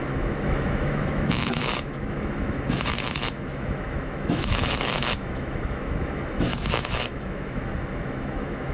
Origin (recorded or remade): remade